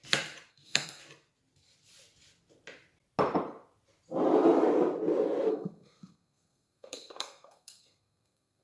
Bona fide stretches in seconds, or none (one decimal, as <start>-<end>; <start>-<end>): 0.0-0.5; 1.0-5.5